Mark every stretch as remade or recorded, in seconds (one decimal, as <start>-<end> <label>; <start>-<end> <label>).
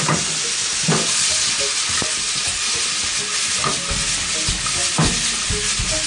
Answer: 0.0-6.1 recorded